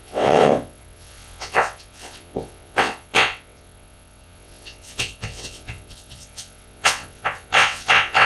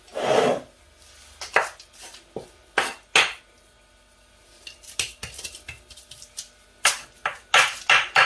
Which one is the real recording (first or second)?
second